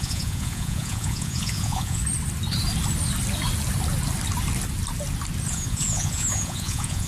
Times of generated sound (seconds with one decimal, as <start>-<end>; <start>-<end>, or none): 0.0-2.0; 5.5-7.1